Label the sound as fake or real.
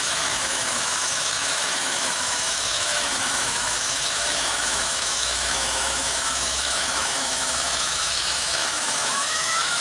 fake